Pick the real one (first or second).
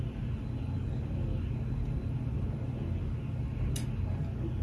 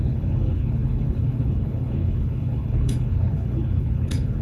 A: first